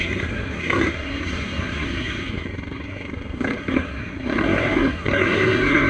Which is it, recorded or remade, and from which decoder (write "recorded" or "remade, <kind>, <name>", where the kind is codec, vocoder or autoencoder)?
remade, codec, SNAC